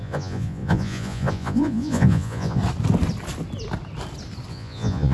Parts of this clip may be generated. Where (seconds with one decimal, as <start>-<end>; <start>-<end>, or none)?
0.0-2.6; 4.5-5.1